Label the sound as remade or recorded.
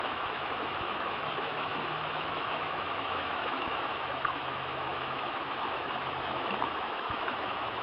remade